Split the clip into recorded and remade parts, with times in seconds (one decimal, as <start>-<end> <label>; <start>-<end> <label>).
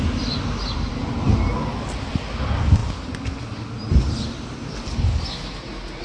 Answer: 0.0-6.0 recorded